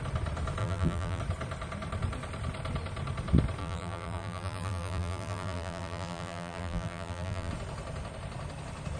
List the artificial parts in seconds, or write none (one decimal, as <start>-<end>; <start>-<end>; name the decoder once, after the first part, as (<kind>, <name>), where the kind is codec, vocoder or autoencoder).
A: 0.6-1.2 (vocoder, BigVGAN v2); 3.6-7.5